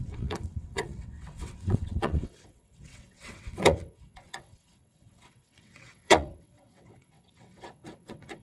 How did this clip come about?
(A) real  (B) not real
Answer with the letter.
B